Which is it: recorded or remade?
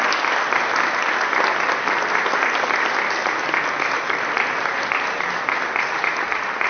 recorded